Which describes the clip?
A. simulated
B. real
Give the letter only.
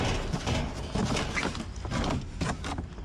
B